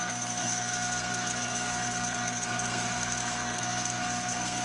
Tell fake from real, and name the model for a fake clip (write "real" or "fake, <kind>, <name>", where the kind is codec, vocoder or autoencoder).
fake, codec, SNAC